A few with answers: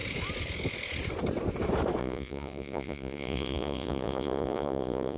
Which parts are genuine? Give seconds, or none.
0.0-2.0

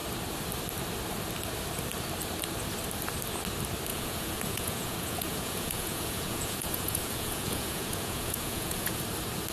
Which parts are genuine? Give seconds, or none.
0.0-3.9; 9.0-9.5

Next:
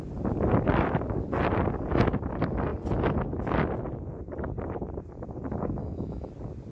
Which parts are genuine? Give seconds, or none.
0.0-5.8; 6.3-6.7